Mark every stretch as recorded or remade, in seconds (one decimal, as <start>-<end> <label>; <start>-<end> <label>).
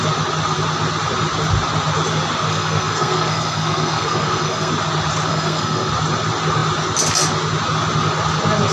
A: 0.0-2.5 recorded; 2.5-4.7 remade; 4.7-5.3 recorded; 5.3-5.9 remade; 5.9-8.7 recorded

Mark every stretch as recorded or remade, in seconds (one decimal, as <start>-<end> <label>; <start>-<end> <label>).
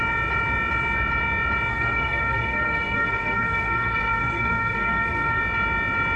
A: 0.0-1.7 recorded; 1.7-5.4 remade; 5.4-6.2 recorded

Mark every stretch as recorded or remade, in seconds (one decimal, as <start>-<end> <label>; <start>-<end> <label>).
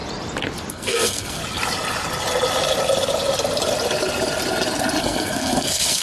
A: 0.0-0.7 recorded; 0.7-1.4 remade; 1.4-5.0 recorded; 5.0-6.0 remade